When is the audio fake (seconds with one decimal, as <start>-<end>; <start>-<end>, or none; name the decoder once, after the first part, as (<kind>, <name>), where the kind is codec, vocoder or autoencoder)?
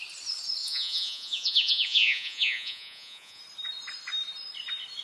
0.6-3.4 (vocoder, Vocos)